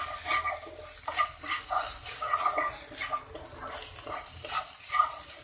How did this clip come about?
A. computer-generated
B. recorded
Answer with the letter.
B